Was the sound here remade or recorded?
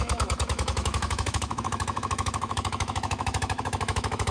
remade